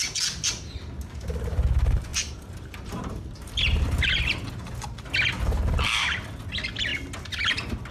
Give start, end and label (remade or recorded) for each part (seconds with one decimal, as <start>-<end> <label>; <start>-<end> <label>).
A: 0.0-2.1 recorded; 2.1-4.1 remade; 4.1-7.9 recorded

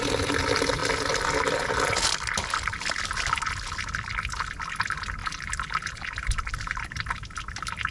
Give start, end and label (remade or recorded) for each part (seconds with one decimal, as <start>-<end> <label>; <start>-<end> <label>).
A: 0.0-5.2 recorded; 5.2-7.4 remade; 7.4-7.9 recorded

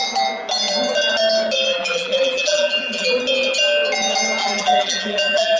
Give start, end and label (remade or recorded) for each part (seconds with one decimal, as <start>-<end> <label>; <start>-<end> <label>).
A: 0.0-1.7 recorded; 1.7-3.2 remade; 3.2-4.4 recorded; 4.4-5.6 remade

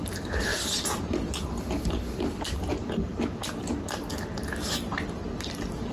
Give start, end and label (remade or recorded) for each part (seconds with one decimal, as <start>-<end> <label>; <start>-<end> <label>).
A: 0.0-0.5 remade; 0.5-1.0 recorded; 1.0-3.1 remade; 3.1-5.9 recorded

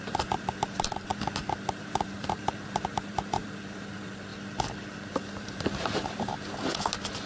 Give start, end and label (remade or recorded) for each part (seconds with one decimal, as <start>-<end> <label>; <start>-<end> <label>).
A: 0.0-1.1 remade; 1.1-1.7 recorded; 1.7-4.3 remade; 4.3-5.1 recorded; 5.1-6.3 remade; 6.3-7.3 recorded

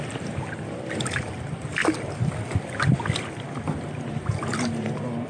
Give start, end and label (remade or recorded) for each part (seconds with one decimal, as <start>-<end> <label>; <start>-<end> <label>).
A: 0.0-1.8 remade; 1.8-5.3 recorded